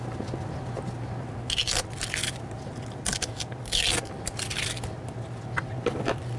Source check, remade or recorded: recorded